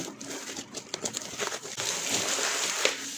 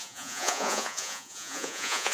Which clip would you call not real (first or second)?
second